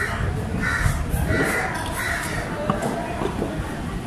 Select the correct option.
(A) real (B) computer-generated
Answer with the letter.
A